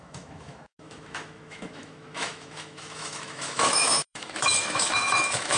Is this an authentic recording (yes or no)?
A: no